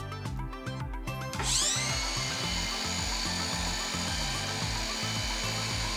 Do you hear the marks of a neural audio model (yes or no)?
no